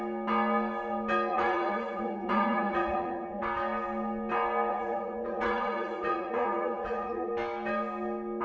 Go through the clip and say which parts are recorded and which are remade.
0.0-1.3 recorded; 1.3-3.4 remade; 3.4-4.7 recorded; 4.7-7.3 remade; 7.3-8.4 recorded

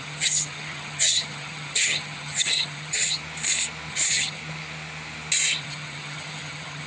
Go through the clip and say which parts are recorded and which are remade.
0.0-3.2 remade; 3.2-3.9 recorded; 3.9-4.4 remade; 4.4-5.6 recorded; 5.6-6.9 remade